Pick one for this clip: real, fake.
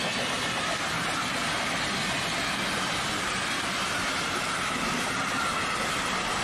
real